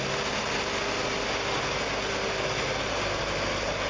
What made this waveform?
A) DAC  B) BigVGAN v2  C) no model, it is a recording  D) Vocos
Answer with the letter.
C